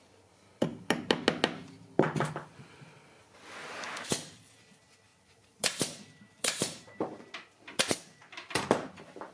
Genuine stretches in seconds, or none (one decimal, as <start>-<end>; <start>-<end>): 0.0-5.1; 7.3-8.2